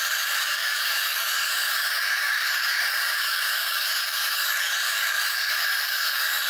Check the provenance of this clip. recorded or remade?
remade